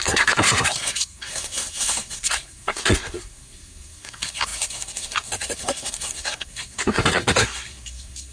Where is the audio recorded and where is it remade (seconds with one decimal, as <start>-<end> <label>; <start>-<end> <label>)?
0.0-8.3 remade